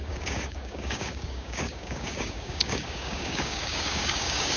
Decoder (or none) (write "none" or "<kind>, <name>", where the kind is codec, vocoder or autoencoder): codec, DAC